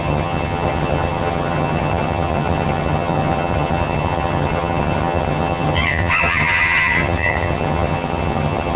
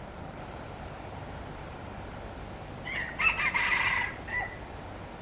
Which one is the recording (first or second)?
second